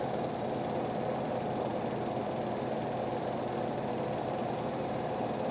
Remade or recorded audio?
remade